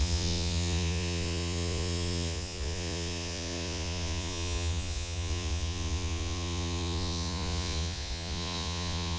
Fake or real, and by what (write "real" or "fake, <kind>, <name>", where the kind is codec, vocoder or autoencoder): fake, vocoder, Vocos